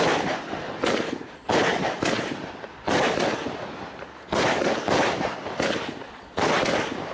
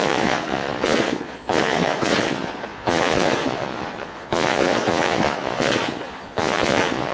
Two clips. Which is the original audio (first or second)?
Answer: first